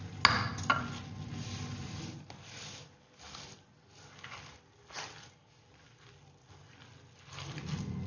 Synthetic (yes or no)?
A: no